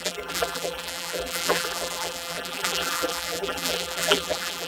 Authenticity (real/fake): fake